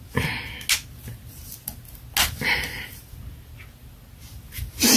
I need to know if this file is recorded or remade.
recorded